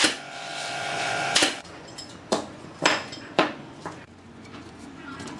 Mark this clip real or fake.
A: fake